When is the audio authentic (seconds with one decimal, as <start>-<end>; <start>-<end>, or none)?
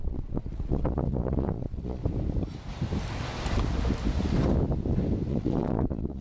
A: 2.0-5.3